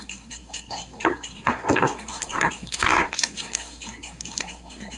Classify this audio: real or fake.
fake